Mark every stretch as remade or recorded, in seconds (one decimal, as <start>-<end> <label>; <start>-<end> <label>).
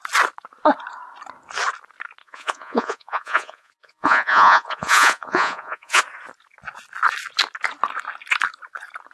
0.0-2.2 recorded; 2.2-6.0 remade; 6.0-9.1 recorded